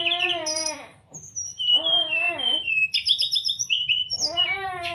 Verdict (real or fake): fake